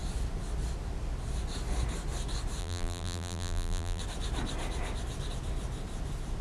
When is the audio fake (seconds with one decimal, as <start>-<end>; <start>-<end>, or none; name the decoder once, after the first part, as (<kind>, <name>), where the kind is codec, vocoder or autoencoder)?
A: 2.6-4.0 (vocoder, BigVGAN v2)